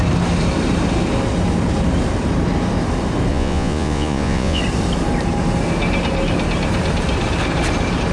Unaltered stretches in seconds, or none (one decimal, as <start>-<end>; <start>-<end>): 0.0-3.3; 4.6-8.1